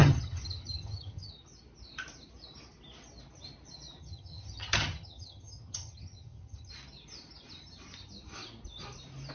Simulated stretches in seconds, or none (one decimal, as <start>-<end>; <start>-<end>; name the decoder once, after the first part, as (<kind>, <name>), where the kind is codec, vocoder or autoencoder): 0.0-1.3 (vocoder, HiFi-GAN); 4.0-6.7